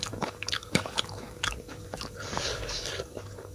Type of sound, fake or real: fake